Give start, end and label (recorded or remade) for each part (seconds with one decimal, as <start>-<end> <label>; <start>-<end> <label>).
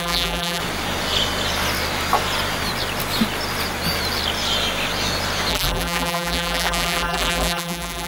0.0-0.6 remade; 0.6-5.5 recorded; 5.5-8.1 remade